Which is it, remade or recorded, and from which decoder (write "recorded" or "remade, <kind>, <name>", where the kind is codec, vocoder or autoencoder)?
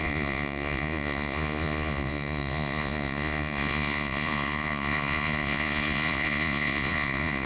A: remade, vocoder, Vocos